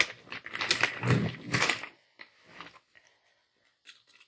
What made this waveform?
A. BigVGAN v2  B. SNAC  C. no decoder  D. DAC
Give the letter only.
C